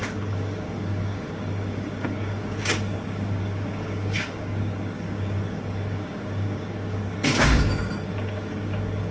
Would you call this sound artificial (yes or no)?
yes